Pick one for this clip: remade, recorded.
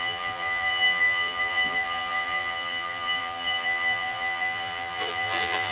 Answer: remade